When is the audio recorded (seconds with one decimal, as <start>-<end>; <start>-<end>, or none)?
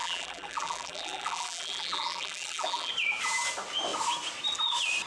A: 2.9-5.1